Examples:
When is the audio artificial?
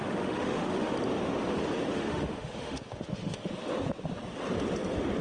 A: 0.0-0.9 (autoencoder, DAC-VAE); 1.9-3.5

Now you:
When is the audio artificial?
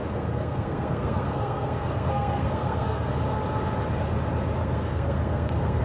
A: 0.0-3.1 (codec, SNAC); 4.6-5.8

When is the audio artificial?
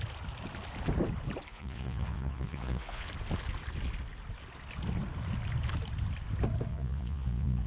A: 1.5-3.1 (vocoder, Vocos); 6.7-7.7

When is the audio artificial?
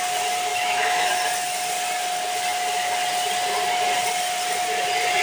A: 0.5-1.1 (autoencoder, DAC-VAE)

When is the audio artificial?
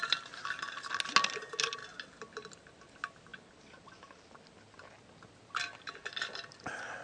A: none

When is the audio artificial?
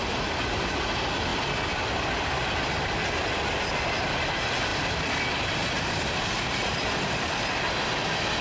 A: 1.3-3.1 (vocoder, BigVGAN v2); 4.7-7.3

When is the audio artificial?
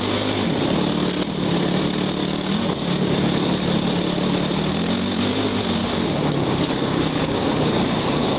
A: 2.2-3.2 (codec, DAC); 5.8-8.4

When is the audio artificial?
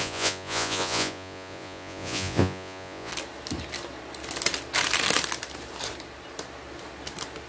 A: 0.0-3.1 (vocoder, Vocos)